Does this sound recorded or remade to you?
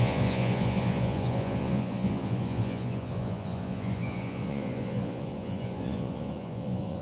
remade